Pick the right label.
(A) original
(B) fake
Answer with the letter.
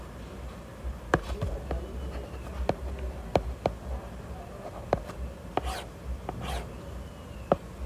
A